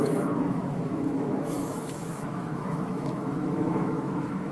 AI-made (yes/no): yes